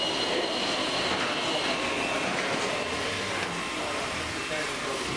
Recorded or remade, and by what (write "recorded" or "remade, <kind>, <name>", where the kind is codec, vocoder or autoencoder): recorded